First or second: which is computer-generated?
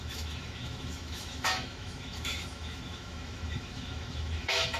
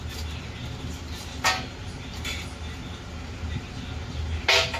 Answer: first